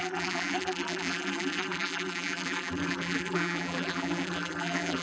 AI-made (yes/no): yes